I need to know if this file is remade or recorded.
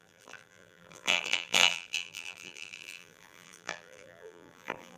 remade